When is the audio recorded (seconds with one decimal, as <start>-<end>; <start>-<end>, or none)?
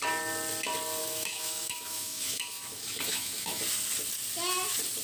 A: 0.0-1.0; 3.6-5.0